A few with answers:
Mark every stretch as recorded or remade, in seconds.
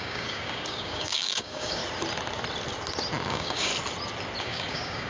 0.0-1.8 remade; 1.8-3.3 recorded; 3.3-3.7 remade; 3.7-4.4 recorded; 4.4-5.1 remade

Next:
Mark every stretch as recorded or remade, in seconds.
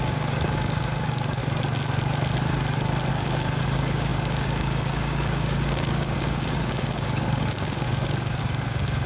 0.0-1.4 remade; 1.4-3.1 recorded; 3.1-9.1 remade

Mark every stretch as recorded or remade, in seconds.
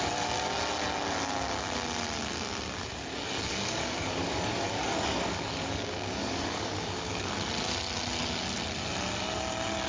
0.0-3.1 recorded; 3.1-7.3 remade; 7.3-9.9 recorded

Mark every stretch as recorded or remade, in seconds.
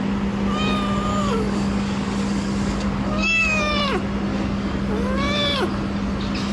0.0-1.1 recorded; 1.1-3.8 remade; 3.8-4.3 recorded; 4.3-4.8 remade; 4.8-6.5 recorded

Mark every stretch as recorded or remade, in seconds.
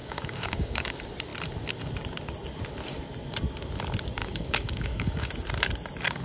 0.0-0.9 remade; 0.9-4.2 recorded; 4.2-5.3 remade; 5.3-6.2 recorded